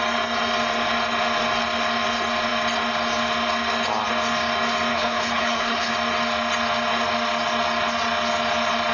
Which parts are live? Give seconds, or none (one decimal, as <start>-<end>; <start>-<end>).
0.0-4.9; 5.9-8.9